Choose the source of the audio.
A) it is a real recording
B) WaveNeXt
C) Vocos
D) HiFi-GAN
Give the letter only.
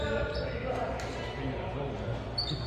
A